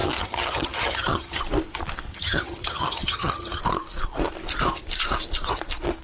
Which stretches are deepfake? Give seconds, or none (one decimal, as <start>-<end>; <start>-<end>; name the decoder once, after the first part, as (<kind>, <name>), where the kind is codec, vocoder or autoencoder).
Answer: 0.0-1.4 (vocoder, HiFi-GAN); 2.1-3.6